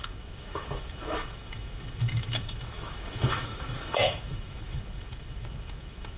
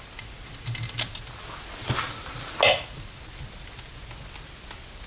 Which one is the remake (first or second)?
first